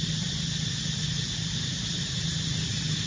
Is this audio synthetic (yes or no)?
no